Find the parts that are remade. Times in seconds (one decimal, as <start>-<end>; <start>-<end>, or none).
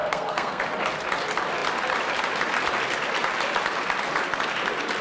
0.0-0.6